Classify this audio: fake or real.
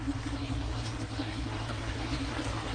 fake